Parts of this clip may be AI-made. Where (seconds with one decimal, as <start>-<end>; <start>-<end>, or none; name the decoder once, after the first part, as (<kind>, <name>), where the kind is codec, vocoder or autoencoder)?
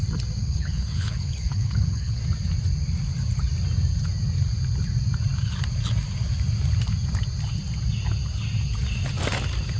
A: 0.4-2.2 (codec, HILCodec)